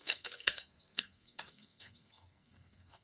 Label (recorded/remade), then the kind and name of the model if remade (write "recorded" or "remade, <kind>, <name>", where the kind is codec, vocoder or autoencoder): remade, codec, SNAC